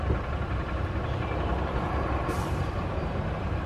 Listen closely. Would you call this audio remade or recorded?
remade